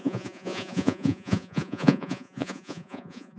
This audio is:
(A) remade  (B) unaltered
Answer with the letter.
A